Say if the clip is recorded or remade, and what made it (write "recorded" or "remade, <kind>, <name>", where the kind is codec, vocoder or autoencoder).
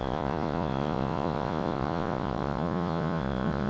remade, vocoder, Vocos